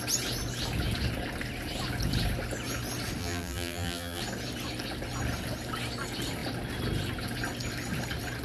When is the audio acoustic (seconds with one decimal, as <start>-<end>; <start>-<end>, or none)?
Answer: 0.0-3.2; 4.2-8.4